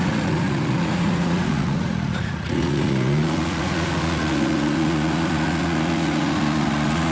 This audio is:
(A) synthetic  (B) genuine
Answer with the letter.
A